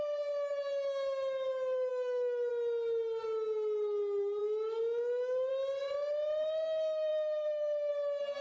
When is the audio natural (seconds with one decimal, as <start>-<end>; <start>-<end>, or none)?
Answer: 0.0-1.9; 2.5-4.4; 5.5-7.1; 7.9-8.4